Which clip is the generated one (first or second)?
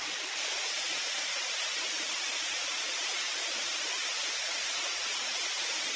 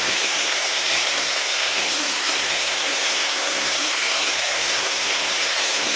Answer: second